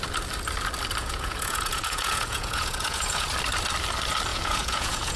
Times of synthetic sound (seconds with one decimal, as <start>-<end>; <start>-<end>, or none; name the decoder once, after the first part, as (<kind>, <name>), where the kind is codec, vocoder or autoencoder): 1.0-3.3 (vocoder, Vocos); 4.3-5.2